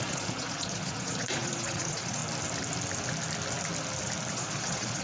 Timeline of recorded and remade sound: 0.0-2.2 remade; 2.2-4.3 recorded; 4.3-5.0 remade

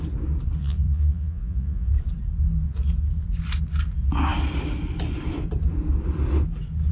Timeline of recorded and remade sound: 0.0-0.6 recorded; 0.6-1.9 remade; 1.9-6.9 recorded

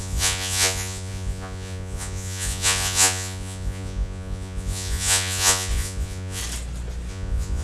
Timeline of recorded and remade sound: 0.0-6.4 remade; 6.4-7.1 recorded; 7.1-7.6 remade